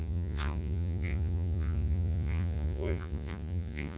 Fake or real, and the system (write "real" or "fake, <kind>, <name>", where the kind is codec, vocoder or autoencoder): fake, vocoder, Vocos